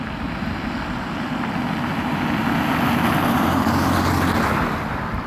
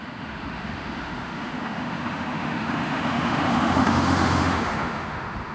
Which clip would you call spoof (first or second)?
second